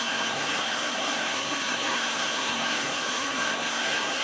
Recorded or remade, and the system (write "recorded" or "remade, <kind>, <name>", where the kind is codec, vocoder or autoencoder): remade, codec, SNAC